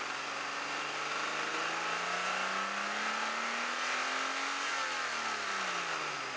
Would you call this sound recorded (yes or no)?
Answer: yes